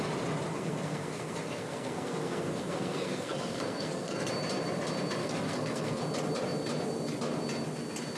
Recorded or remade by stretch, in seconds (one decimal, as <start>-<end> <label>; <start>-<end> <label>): 0.0-0.5 recorded; 0.5-4.3 remade; 4.3-5.2 recorded; 5.2-6.0 remade; 6.0-8.2 recorded